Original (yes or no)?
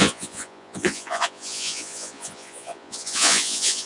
no